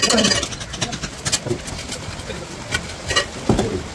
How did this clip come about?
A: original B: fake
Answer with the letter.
A